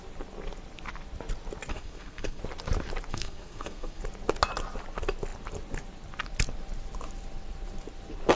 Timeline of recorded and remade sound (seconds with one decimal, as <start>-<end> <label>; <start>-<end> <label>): 0.0-1.7 recorded; 1.7-2.4 remade; 2.4-3.1 recorded; 3.1-4.0 remade; 4.0-8.4 recorded